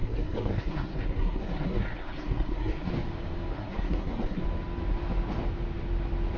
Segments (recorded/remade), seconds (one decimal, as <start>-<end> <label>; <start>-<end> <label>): 0.0-2.9 remade; 2.9-3.5 recorded; 3.5-4.4 remade; 4.4-6.4 recorded